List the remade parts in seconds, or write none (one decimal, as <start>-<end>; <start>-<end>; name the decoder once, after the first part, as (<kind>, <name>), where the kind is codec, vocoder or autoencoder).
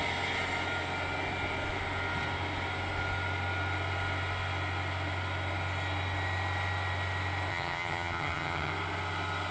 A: 7.5-8.7 (vocoder, HiFi-GAN)